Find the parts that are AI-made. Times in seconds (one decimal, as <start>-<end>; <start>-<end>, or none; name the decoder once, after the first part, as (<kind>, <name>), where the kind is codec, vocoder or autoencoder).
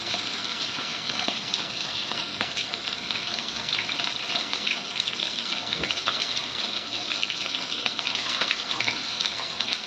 0.0-3.7 (codec, SNAC); 4.4-9.9